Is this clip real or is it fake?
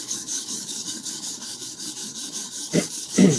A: fake